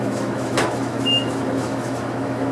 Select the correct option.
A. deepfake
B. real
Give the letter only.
A